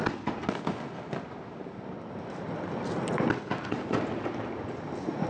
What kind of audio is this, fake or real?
real